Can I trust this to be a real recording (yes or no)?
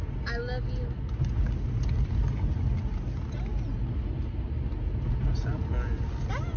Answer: yes